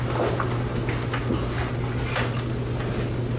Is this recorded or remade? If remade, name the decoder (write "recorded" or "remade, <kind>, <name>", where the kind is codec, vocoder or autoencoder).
recorded